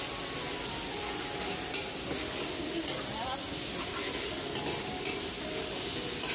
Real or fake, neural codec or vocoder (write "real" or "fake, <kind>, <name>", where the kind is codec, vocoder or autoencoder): real